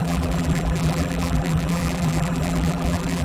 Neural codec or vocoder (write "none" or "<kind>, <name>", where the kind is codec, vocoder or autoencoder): vocoder, BigVGAN v2